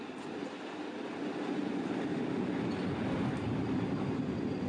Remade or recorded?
recorded